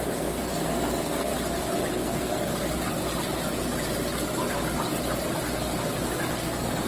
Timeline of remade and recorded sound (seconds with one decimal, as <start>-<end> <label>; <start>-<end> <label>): 0.0-1.3 remade; 1.3-1.9 recorded; 1.9-2.5 remade; 2.5-6.3 recorded; 6.3-6.9 remade